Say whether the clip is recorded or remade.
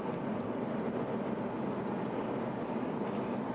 recorded